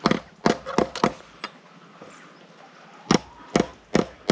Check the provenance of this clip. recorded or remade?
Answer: recorded